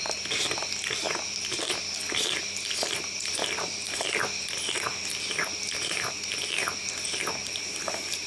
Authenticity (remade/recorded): recorded